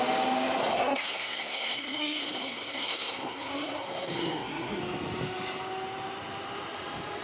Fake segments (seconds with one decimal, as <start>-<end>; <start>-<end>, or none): 0.6-4.8

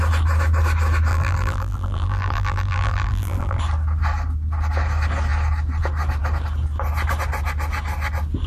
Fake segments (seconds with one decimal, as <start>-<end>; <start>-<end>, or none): 1.1-3.6

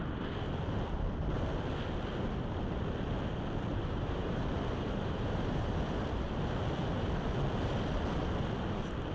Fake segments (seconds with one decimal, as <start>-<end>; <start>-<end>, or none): 3.7-6.4

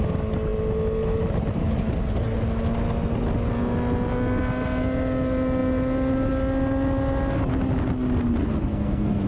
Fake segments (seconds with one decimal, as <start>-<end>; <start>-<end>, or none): 8.4-9.3

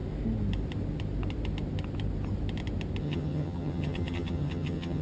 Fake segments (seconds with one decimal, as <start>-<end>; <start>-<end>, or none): 3.0-5.0